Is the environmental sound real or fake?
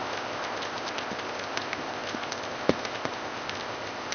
fake